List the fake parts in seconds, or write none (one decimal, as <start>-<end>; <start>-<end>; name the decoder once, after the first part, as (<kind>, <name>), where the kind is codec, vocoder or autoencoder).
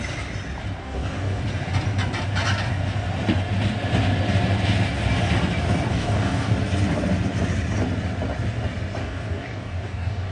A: 0.8-1.4 (codec, DAC); 5.9-6.5; 9.0-10.3